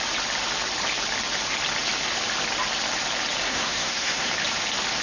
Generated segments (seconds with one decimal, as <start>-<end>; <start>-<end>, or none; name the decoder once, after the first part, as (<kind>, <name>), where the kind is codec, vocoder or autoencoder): 3.4-4.3 (codec, SNAC)